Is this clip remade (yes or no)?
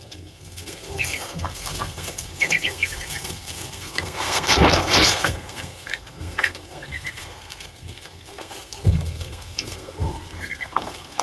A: yes